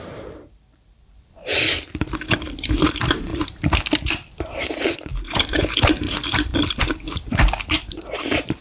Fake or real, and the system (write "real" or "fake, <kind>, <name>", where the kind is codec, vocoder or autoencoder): fake, vocoder, BigVGAN v2